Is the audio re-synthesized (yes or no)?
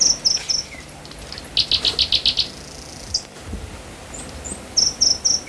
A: no